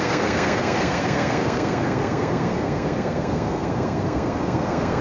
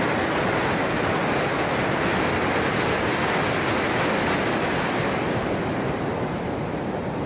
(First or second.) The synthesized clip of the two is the first